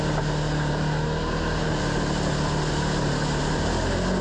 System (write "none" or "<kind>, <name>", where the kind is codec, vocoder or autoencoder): none